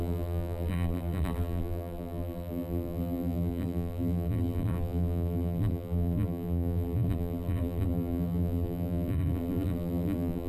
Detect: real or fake fake